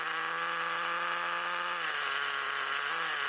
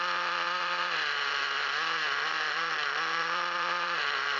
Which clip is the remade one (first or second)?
second